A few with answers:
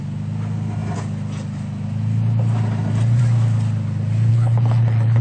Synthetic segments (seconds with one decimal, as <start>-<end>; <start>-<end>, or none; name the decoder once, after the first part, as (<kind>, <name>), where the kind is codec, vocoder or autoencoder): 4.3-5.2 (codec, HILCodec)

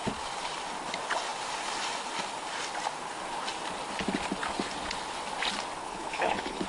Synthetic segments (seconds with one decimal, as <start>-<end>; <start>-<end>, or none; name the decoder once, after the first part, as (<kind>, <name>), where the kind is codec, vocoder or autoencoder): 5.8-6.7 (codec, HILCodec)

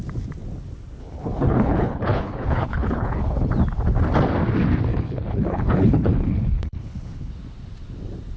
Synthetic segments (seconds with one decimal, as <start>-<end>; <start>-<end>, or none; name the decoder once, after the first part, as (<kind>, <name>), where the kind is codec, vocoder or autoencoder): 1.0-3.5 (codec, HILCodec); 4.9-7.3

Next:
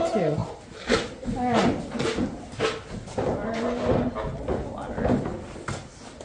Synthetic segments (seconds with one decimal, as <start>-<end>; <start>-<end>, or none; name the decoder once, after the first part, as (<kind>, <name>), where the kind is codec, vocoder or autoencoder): none